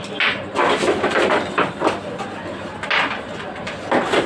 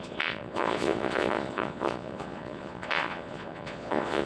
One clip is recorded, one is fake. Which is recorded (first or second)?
first